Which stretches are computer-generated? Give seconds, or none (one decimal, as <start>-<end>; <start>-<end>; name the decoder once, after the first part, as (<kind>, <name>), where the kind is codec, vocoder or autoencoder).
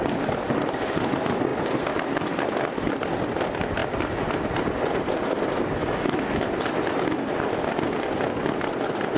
5.8-6.4 (autoencoder, DAC-VAE)